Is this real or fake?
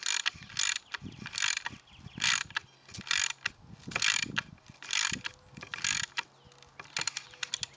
real